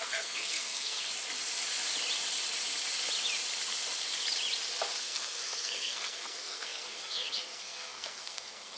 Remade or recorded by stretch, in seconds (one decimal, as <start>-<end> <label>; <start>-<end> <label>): 0.0-1.1 remade; 1.1-5.0 recorded; 5.0-8.8 remade